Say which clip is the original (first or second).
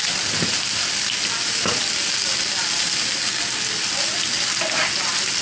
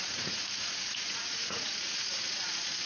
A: first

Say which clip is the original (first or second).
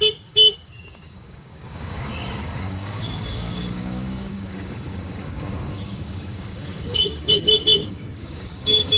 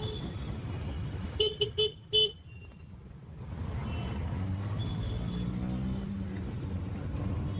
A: second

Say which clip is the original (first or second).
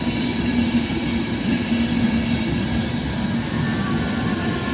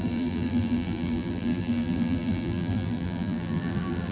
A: first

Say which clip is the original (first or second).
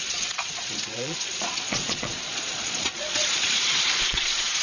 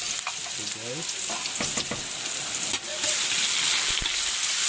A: second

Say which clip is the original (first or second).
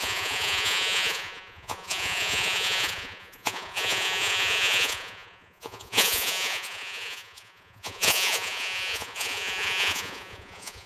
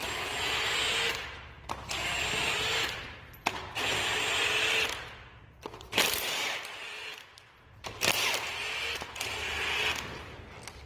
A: second